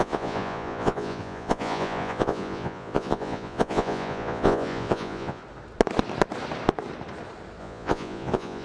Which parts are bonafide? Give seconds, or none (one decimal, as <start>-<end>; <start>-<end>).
5.4-7.6